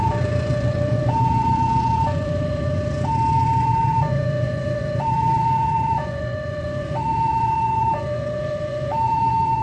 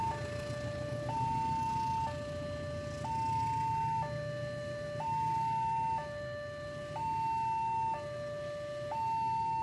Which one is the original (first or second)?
second